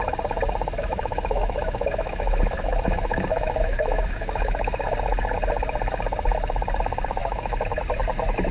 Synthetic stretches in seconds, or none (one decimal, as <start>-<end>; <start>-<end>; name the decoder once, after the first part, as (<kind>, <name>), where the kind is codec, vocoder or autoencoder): 0.8-4.9 (autoencoder, DAC-VAE); 7.2-7.8